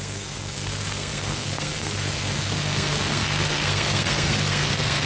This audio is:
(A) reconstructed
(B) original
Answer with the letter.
A